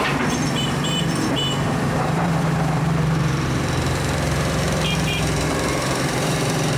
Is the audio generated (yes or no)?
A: yes